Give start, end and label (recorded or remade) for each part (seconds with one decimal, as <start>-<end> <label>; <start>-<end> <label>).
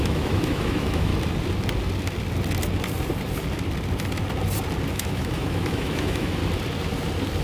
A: 0.0-1.1 remade; 1.1-4.9 recorded; 4.9-6.4 remade; 6.4-7.4 recorded